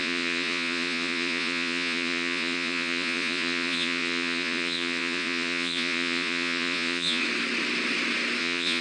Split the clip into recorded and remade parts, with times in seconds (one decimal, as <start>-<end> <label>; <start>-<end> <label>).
0.0-7.2 remade; 7.2-8.4 recorded; 8.4-8.8 remade